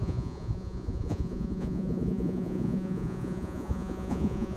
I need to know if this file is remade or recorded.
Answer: remade